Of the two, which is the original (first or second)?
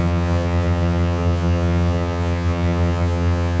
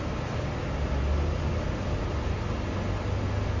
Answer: second